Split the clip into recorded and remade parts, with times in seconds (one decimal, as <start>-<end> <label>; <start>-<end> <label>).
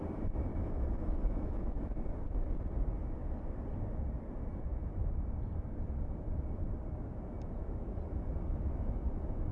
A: 0.0-0.5 recorded; 0.5-1.8 remade; 1.8-9.5 recorded